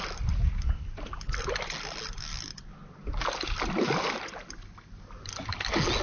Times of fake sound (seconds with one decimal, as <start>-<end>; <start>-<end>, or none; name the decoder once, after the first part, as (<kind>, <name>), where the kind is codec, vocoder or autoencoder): none